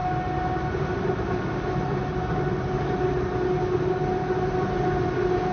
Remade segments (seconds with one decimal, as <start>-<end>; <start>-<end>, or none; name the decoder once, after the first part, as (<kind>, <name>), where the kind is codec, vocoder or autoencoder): none